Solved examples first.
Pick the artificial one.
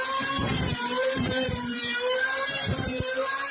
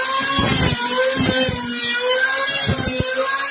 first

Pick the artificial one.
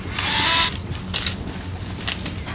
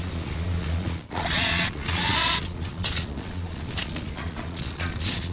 second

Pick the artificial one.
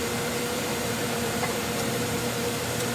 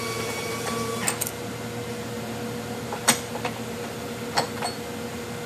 first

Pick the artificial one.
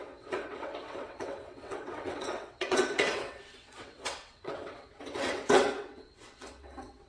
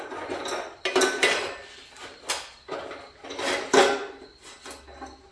first